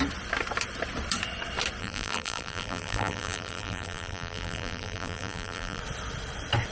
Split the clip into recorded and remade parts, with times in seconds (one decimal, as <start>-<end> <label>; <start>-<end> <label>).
0.0-1.8 recorded; 1.8-5.8 remade; 5.8-6.7 recorded